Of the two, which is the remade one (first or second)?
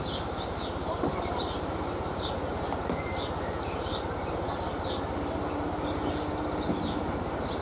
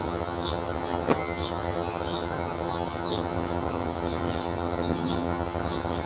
second